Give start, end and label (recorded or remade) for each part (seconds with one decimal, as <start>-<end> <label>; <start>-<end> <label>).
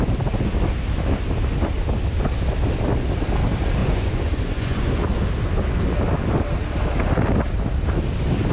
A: 0.0-3.8 recorded; 3.8-4.9 remade; 4.9-8.5 recorded